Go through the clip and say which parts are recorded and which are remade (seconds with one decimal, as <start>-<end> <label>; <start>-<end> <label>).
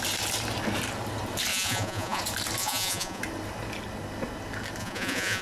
0.0-1.5 recorded; 1.5-2.2 remade; 2.2-2.6 recorded; 2.6-3.2 remade; 3.2-4.8 recorded; 4.8-5.4 remade